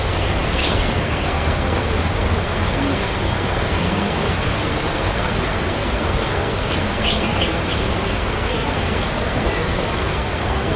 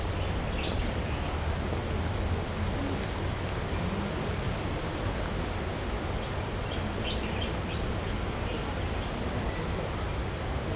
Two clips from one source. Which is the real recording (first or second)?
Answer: second